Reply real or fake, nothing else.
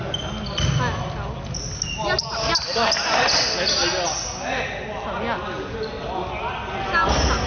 real